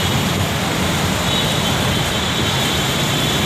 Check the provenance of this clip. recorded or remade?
recorded